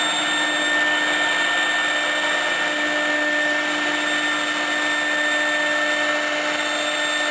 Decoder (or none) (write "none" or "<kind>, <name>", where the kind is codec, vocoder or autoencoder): none